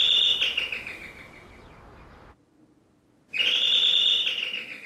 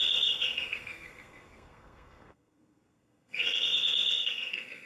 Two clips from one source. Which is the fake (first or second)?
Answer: second